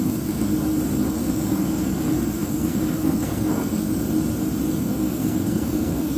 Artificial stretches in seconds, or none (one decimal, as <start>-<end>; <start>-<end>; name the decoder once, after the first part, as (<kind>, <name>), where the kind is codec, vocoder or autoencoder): 0.0-0.5 (codec, SNAC); 1.1-4.0; 4.7-6.2